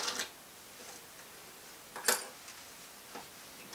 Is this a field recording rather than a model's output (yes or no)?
yes